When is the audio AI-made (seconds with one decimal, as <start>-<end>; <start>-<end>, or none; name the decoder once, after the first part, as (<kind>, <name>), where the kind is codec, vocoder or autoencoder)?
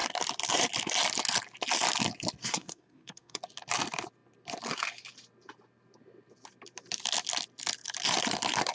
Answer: 2.4-3.4 (codec, SNAC)